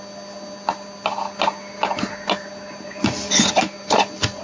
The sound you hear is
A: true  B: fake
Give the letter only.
A